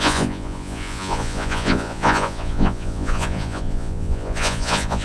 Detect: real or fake fake